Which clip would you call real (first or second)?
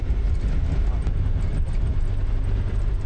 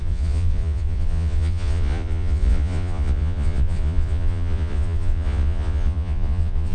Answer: first